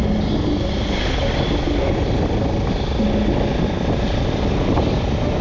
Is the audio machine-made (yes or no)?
no